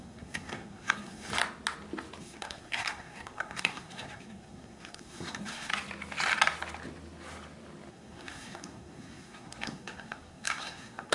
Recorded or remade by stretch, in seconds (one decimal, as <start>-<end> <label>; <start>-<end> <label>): 0.0-1.3 remade; 1.3-2.2 recorded; 2.2-5.7 remade; 5.7-7.9 recorded; 7.9-11.1 remade